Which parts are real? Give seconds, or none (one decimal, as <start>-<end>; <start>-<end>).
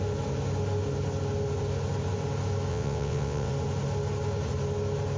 0.0-2.7; 3.5-5.2